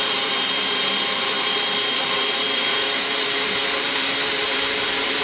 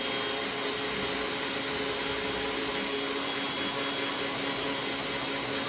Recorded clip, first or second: second